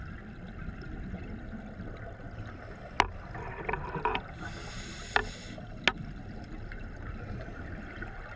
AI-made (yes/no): no